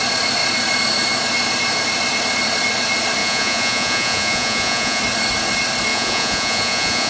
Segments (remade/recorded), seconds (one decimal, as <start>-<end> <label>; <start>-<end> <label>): 0.0-3.2 recorded; 3.2-5.0 remade; 5.0-5.9 recorded; 5.9-7.1 remade